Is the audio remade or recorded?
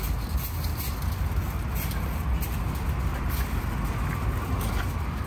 recorded